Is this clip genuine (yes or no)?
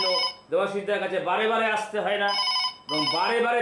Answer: yes